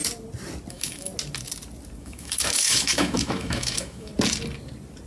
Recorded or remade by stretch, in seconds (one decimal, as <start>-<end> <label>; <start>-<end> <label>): 0.0-0.7 recorded; 0.7-1.1 remade; 1.1-2.0 recorded; 2.0-4.1 remade; 4.1-5.1 recorded